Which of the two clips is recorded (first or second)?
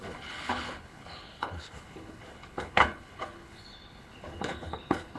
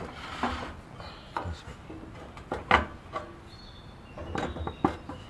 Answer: second